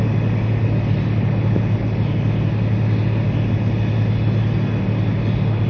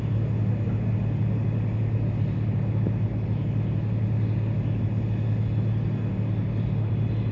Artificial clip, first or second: second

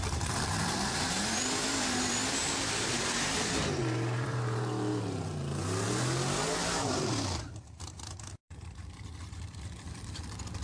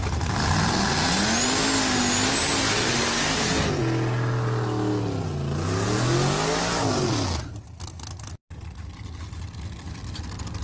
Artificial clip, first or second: first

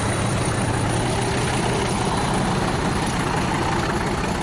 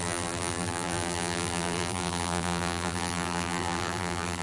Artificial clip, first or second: second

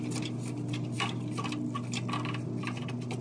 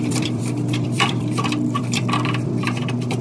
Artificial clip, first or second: second